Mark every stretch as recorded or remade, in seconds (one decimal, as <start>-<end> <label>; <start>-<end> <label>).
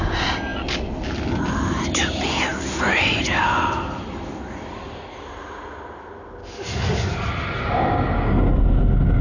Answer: 0.0-6.4 recorded; 6.4-7.1 remade; 7.1-9.2 recorded